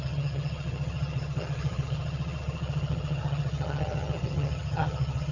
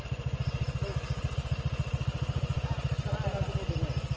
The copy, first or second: first